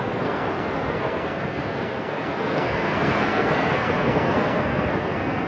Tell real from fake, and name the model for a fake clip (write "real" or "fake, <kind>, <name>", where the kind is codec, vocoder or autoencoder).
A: fake, codec, SNAC